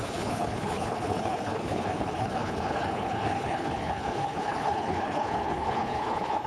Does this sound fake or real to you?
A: fake